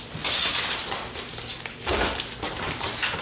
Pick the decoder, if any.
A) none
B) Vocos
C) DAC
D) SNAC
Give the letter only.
A